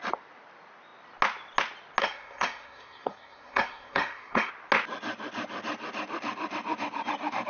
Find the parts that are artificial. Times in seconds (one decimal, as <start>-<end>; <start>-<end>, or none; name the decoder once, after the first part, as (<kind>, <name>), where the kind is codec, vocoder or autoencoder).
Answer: 2.0-4.5 (codec, SNAC)